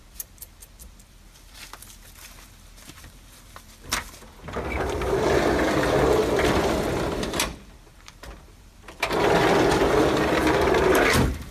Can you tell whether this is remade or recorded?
remade